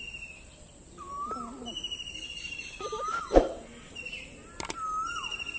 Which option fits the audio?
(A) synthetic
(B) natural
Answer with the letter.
B